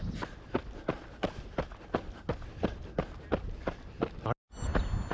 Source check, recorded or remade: recorded